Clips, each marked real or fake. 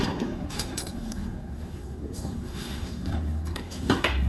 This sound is fake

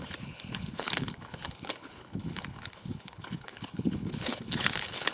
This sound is fake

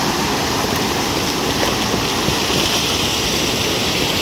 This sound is real